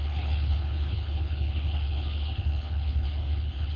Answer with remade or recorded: remade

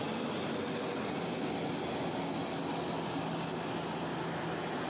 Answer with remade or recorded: recorded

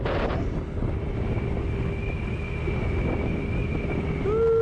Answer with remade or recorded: recorded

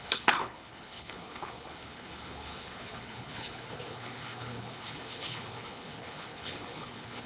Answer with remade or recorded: remade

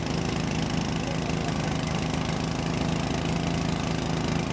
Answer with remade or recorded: recorded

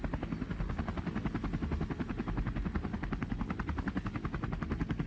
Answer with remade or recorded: recorded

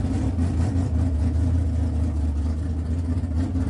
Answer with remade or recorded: recorded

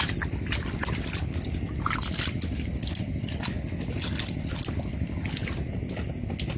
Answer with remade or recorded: recorded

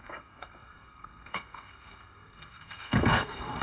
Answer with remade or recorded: remade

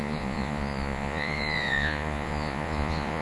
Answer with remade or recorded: remade